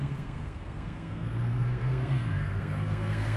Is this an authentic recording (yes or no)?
no